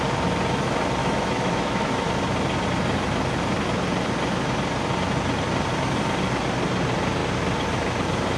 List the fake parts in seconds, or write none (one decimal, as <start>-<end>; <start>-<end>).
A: 1.0-2.1